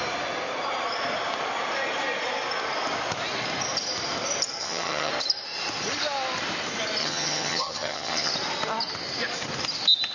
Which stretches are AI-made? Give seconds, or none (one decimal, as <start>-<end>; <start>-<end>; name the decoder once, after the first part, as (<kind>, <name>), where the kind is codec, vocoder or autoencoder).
4.6-5.1 (vocoder, HiFi-GAN); 7.0-8.3